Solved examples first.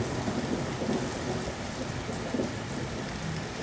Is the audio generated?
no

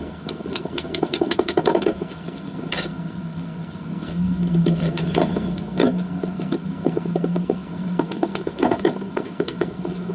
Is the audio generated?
yes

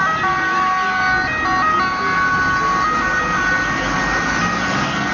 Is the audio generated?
no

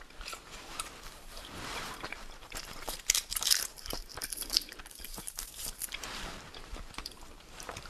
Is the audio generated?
yes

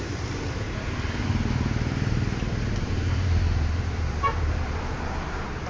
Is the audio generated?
yes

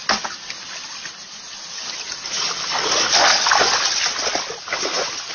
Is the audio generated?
no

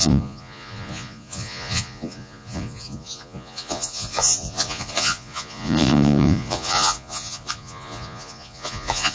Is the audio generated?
yes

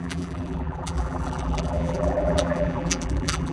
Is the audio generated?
yes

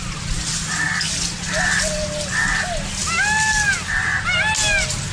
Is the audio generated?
no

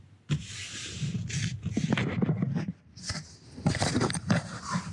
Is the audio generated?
no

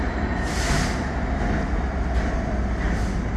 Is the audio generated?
no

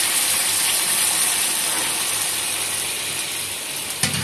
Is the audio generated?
no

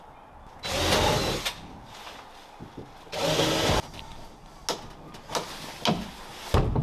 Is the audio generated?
no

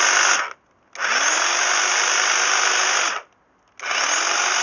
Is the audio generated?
no